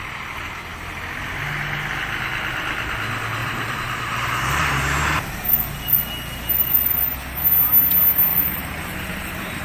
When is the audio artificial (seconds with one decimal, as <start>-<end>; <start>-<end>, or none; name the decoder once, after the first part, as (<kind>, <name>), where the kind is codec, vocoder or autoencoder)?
3.4-4.7 (vocoder, BigVGAN v2); 8.3-9.6